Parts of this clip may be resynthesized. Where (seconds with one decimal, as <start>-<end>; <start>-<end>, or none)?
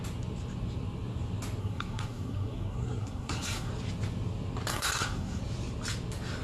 1.6-3.7; 4.7-5.4